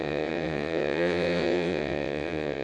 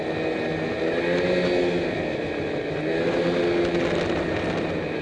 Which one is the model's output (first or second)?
first